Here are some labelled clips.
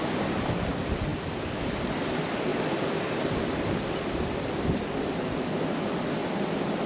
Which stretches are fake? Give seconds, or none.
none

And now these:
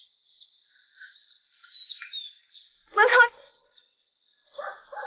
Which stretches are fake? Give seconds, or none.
none

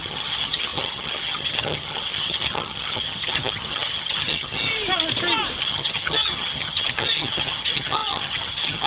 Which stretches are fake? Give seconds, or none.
0.0-4.7 (vocoder, HiFi-GAN); 5.6-8.9

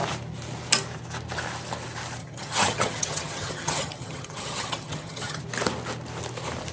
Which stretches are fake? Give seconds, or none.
2.2-5.4 (vocoder, HiFi-GAN)